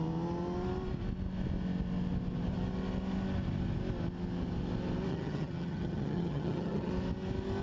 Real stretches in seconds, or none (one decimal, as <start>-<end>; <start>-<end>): 0.0-5.1; 6.9-7.6